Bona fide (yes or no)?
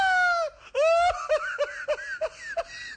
yes